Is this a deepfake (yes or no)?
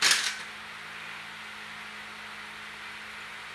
no